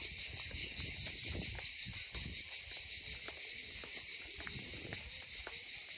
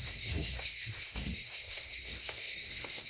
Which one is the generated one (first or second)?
second